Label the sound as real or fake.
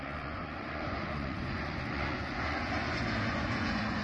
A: fake